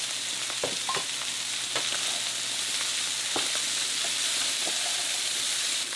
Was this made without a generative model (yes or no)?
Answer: yes